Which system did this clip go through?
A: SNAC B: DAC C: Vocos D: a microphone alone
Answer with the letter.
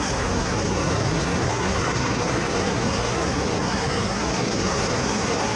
A